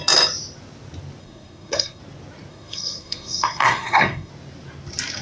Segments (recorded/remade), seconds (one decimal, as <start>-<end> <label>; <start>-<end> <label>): 0.0-1.2 recorded; 1.2-2.0 remade; 2.0-2.5 recorded; 2.5-4.3 remade; 4.3-5.2 recorded